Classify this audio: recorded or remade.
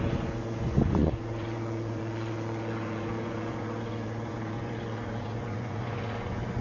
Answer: remade